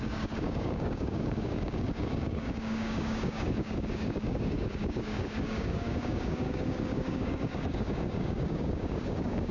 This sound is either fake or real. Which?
fake